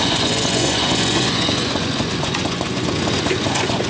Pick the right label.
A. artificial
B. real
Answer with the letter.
A